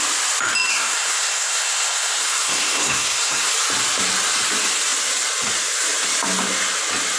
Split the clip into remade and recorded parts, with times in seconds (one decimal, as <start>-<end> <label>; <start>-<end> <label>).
0.0-0.7 recorded; 0.7-3.5 remade; 3.5-7.2 recorded